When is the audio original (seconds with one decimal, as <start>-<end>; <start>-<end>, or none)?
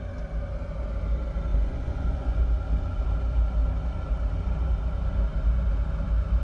0.0-1.5; 2.4-6.4